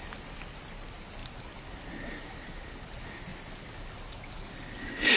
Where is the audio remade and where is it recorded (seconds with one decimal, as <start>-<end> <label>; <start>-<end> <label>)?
0.0-5.2 recorded